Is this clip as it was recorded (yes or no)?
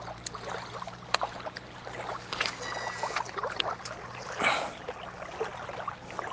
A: yes